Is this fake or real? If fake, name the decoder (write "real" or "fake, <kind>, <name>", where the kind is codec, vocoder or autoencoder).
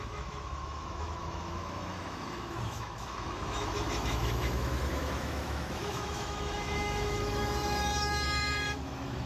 fake, autoencoder, DAC-VAE